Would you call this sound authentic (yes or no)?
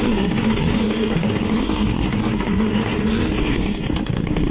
no